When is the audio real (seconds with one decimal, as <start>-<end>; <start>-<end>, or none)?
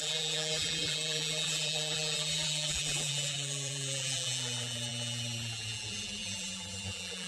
none